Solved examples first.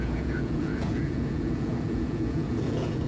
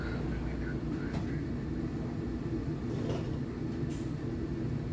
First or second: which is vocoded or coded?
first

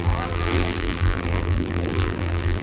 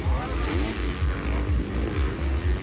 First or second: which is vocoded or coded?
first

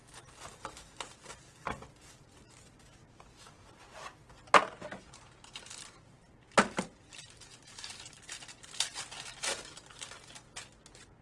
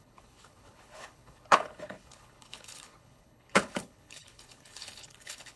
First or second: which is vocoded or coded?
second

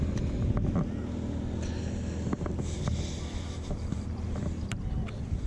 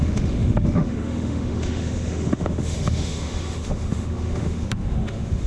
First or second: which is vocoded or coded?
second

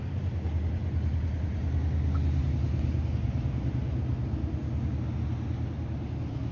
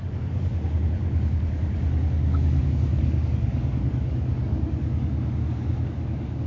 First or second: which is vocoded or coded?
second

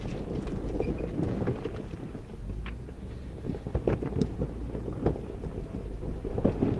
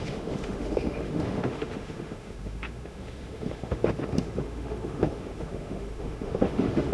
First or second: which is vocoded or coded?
second